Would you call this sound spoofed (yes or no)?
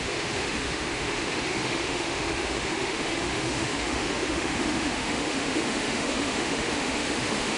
yes